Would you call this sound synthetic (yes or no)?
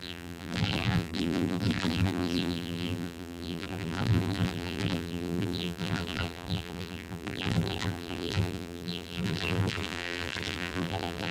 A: yes